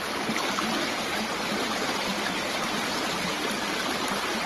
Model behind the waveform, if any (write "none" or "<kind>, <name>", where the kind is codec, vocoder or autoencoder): none